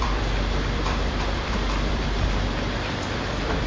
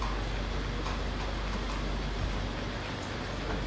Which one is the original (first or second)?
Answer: second